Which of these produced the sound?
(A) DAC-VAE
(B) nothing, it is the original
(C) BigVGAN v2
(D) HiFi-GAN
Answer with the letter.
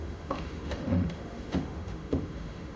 A